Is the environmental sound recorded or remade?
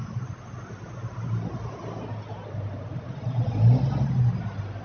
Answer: recorded